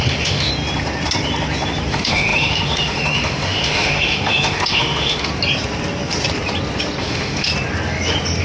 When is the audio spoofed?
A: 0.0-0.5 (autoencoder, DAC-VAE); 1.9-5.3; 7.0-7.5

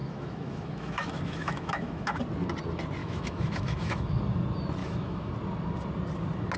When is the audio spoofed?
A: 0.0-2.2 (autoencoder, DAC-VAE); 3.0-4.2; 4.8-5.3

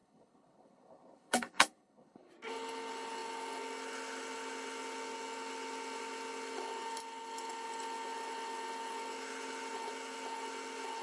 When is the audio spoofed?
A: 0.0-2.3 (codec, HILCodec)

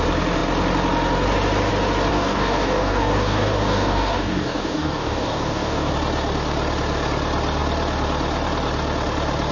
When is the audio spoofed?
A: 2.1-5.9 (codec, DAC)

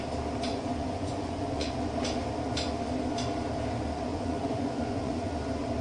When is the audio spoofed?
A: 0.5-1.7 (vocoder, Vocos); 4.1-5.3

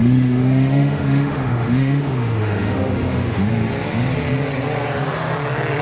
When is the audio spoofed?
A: 0.0-3.5 (autoencoder, DAC-VAE)